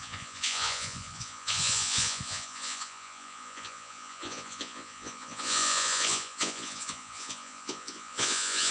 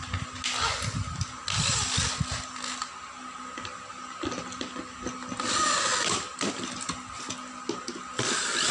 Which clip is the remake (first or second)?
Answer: first